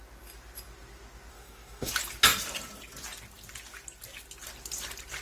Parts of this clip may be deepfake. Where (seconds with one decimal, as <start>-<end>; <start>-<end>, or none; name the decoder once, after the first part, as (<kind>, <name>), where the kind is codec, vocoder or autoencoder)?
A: 1.3-1.9 (codec, DAC)